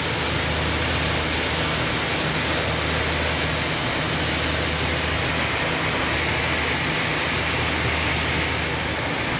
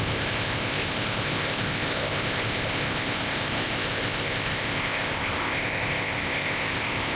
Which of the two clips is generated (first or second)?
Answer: second